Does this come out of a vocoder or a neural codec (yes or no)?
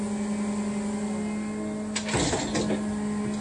no